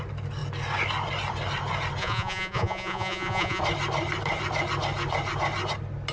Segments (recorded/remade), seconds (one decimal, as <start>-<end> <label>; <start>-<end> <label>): 0.0-2.0 recorded; 2.0-3.6 remade; 3.6-6.1 recorded